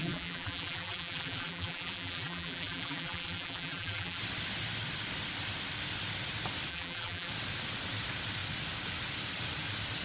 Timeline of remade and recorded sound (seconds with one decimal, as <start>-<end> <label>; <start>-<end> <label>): 0.0-4.2 remade; 4.2-6.7 recorded; 6.7-7.3 remade; 7.3-10.0 recorded